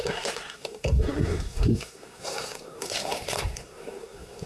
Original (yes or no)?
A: no